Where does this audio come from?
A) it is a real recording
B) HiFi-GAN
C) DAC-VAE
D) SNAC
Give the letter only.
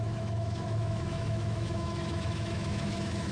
C